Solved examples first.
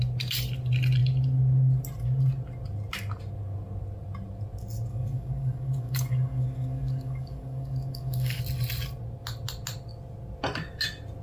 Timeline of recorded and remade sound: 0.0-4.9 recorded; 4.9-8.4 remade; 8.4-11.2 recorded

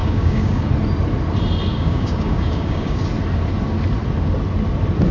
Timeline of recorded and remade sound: 0.0-0.7 remade; 0.7-1.7 recorded; 1.7-3.0 remade; 3.0-5.1 recorded

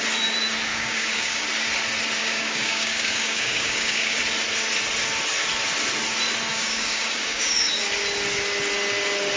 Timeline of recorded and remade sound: 0.0-0.7 recorded; 0.7-1.4 remade; 1.4-2.2 recorded; 2.2-4.2 remade; 4.2-6.5 recorded; 6.5-7.7 remade; 7.7-9.4 recorded

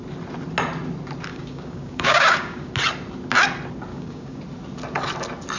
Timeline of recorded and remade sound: 0.0-1.3 recorded; 1.3-2.7 remade; 2.7-3.9 recorded; 3.9-4.4 remade; 4.4-5.6 recorded